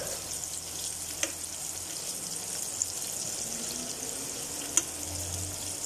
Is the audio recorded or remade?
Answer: recorded